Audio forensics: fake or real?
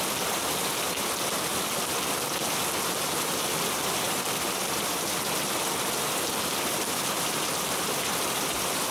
fake